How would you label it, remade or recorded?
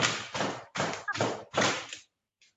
remade